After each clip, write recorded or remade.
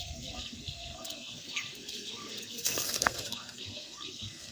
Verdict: remade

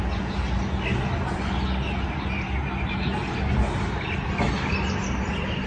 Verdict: recorded